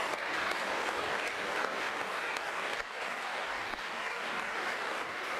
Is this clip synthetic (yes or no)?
yes